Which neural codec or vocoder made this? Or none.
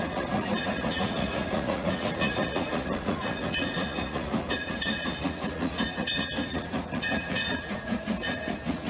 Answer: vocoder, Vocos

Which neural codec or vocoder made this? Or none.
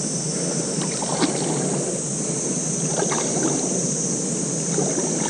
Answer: none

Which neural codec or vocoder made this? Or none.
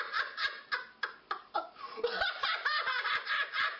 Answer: none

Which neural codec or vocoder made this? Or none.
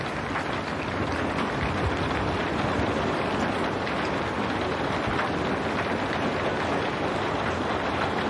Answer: none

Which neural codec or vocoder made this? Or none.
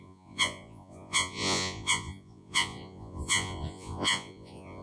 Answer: vocoder, Vocos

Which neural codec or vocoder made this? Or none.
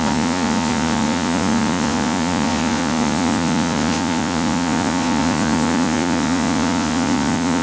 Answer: vocoder, Vocos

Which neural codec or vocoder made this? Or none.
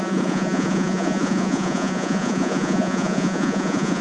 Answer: vocoder, Vocos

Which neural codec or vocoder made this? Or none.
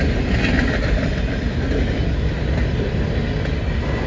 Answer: none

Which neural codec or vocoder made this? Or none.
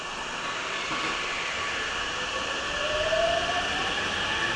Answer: none